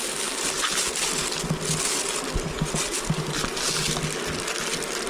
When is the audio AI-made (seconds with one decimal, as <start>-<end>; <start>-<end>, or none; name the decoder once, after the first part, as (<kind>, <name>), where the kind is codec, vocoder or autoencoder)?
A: none